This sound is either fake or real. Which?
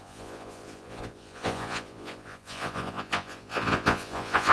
fake